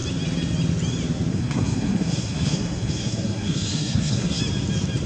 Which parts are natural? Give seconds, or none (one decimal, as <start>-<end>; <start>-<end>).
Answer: 0.0-1.3; 4.4-5.1